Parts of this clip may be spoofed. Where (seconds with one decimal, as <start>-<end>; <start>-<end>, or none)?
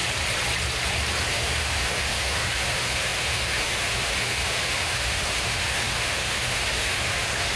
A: 1.3-7.6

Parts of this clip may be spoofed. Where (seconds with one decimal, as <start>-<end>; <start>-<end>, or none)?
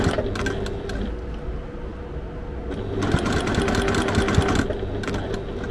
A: none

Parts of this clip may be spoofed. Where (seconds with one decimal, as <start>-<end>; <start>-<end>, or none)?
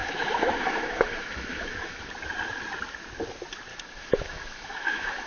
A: 0.0-2.1; 3.7-5.3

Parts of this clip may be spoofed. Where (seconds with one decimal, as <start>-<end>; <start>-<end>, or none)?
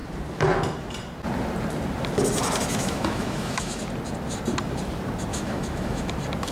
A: 2.7-3.8; 5.3-6.1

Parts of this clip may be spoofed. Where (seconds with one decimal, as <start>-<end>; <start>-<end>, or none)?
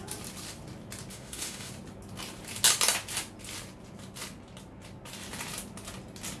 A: 1.1-1.7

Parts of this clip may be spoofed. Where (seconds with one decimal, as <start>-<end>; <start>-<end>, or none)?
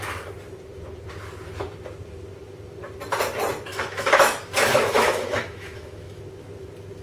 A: 3.7-6.2